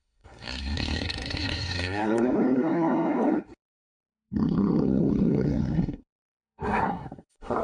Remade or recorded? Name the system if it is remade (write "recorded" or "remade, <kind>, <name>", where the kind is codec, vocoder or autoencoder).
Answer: remade, codec, SNAC